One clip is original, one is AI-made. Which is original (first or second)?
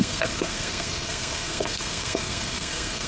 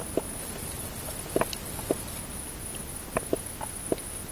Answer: second